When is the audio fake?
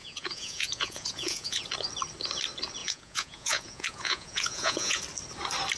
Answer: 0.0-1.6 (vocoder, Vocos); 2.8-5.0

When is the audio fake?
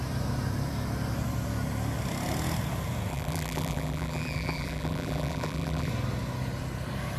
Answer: 3.1-5.9 (vocoder, BigVGAN v2)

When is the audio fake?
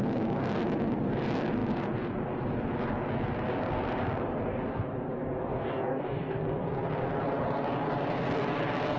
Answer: 5.5-6.4 (codec, DAC)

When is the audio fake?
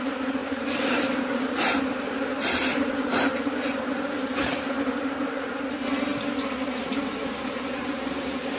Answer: 0.0-6.1 (vocoder, BigVGAN v2); 6.9-8.6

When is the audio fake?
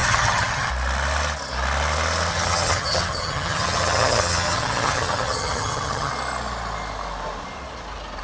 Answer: 0.0-0.7 (vocoder, HiFi-GAN); 2.3-6.1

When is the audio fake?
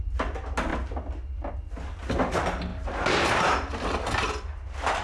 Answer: 2.7-3.7 (vocoder, BigVGAN v2)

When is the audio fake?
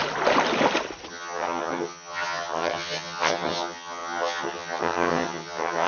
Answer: 1.1-5.9 (vocoder, HiFi-GAN)